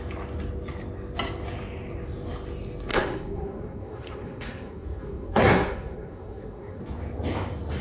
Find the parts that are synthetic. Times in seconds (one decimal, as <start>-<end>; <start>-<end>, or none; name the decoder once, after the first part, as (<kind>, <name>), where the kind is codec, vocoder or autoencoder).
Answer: 2.9-6.8 (codec, SNAC)